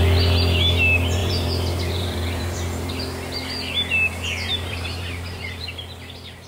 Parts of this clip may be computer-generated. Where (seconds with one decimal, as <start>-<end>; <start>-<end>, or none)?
1.2-2.9; 4.5-5.6